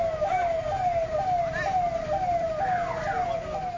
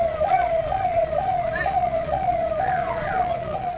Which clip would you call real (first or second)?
first